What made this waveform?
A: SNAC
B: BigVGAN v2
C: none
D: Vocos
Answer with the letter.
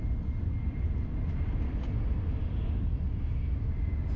C